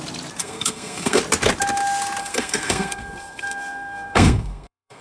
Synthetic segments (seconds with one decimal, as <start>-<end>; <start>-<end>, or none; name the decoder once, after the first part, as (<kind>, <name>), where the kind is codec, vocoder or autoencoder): 0.4-1.2 (codec, SNAC); 2.2-5.0